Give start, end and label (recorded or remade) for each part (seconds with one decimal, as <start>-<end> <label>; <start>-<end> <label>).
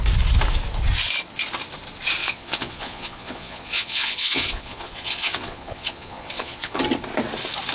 0.0-2.2 recorded; 2.2-6.8 remade; 6.8-7.7 recorded